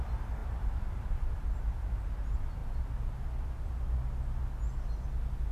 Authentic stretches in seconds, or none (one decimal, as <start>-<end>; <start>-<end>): 0.0-0.4; 1.4-5.5